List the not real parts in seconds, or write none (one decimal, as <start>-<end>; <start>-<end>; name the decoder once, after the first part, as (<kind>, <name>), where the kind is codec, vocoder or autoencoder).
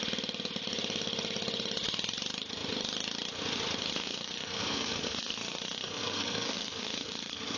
3.9-7.6 (codec, SNAC)